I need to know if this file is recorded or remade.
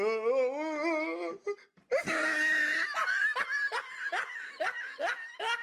recorded